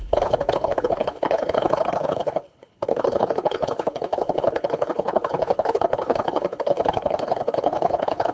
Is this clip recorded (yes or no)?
no